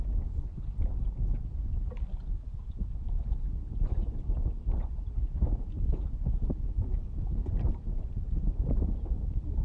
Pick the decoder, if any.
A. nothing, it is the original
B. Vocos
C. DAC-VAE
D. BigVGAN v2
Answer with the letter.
A